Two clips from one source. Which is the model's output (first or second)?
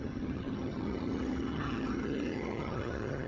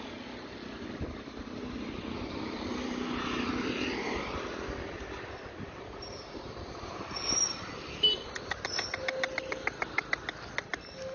first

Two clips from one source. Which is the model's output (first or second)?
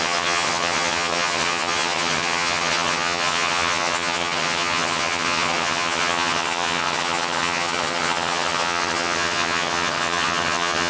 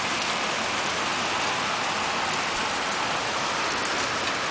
first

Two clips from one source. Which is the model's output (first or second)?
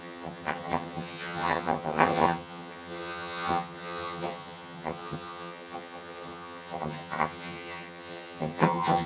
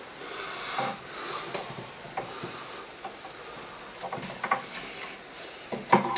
first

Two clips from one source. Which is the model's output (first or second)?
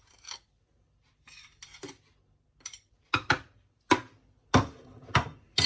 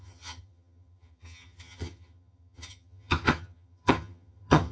second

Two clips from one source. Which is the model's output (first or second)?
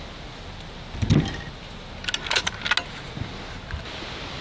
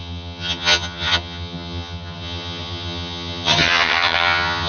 second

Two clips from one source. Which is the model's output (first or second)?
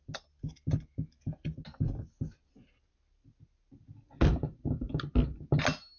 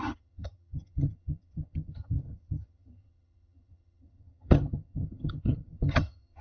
second